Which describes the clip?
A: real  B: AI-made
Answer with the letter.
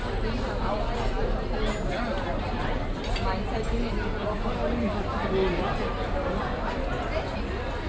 A